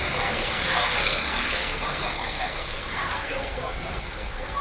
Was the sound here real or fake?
fake